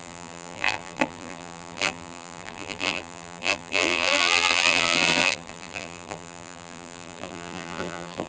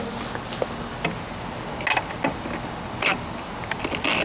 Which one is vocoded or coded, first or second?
first